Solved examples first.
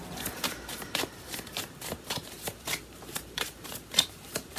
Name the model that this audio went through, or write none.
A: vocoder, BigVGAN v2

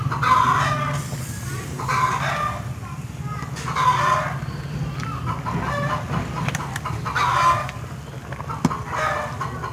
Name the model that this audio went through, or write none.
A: none